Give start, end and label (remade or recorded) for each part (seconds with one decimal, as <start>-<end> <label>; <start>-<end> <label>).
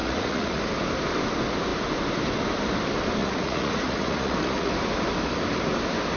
0.0-0.6 remade; 0.6-3.2 recorded; 3.2-4.7 remade; 4.7-6.2 recorded